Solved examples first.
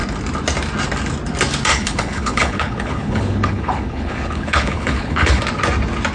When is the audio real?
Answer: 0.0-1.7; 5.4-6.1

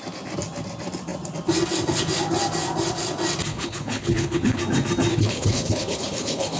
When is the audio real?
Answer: 0.0-3.5; 4.6-5.1